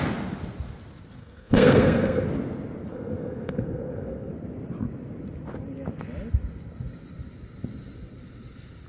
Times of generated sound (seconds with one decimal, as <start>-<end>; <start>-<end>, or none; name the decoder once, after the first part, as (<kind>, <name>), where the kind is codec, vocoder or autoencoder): 1.2-2.3 (codec, SNAC); 2.9-4.3